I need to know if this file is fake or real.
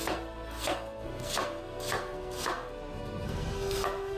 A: fake